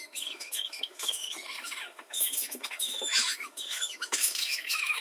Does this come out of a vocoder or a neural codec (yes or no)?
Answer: yes